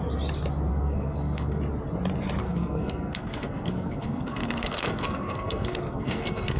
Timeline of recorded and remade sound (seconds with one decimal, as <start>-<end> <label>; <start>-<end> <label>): 0.0-0.7 recorded; 0.7-1.6 remade; 1.6-2.4 recorded; 2.4-6.6 remade